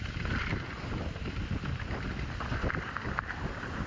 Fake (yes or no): no